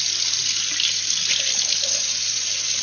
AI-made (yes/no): no